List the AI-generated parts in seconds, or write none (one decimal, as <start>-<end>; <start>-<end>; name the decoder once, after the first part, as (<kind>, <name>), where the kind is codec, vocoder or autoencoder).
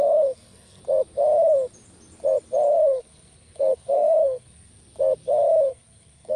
0.0-0.8 (codec, SNAC); 2.7-4.7; 5.7-6.4